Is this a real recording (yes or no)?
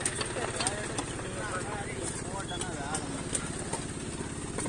yes